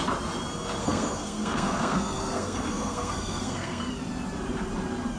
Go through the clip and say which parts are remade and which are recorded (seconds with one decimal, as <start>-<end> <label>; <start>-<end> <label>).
0.0-0.8 recorded; 0.8-3.9 remade; 3.9-5.2 recorded